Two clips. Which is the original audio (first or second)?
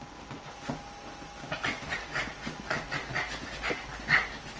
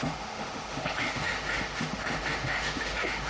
first